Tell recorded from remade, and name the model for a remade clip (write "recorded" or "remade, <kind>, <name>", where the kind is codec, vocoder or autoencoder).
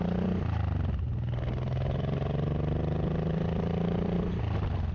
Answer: recorded